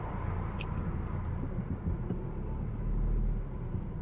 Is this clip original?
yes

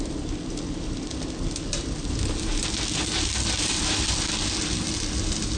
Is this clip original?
yes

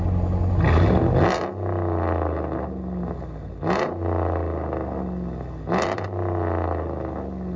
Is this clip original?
yes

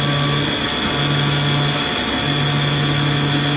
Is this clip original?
yes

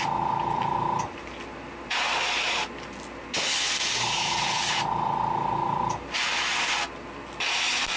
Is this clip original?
yes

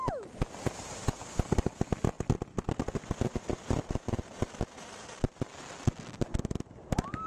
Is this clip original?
yes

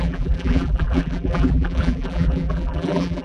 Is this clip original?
no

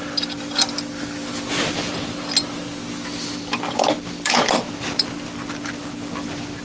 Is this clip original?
yes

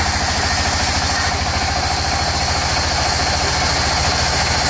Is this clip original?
yes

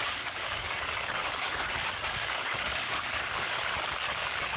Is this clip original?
no